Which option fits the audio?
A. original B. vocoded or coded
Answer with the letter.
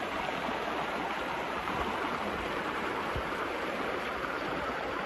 B